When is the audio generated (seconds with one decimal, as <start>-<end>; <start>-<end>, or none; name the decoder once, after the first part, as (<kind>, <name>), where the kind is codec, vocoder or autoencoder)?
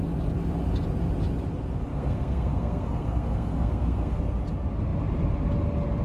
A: 1.9-4.2 (codec, SNAC)